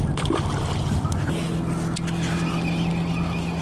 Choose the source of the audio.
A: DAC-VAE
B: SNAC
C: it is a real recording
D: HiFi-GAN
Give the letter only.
C